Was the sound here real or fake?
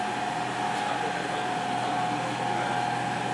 real